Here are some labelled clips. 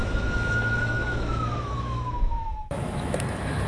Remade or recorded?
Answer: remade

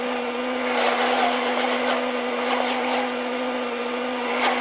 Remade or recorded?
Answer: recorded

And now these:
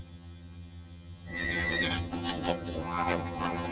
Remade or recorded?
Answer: remade